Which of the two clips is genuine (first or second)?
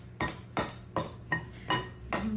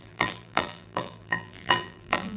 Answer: first